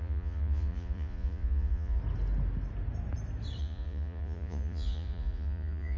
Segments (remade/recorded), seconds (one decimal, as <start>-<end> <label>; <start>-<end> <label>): 0.0-2.0 remade; 2.0-3.6 recorded; 3.6-6.0 remade